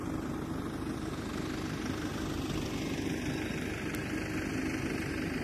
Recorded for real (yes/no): yes